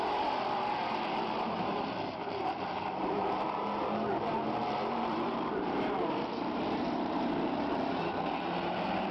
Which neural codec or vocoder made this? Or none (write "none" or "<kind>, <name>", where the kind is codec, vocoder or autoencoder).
vocoder, BigVGAN v2